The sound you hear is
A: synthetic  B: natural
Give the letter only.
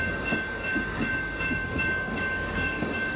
A